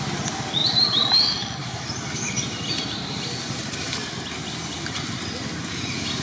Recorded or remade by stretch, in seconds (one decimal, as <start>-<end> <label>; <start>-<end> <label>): 0.0-0.6 recorded; 0.6-4.3 remade; 4.3-6.2 recorded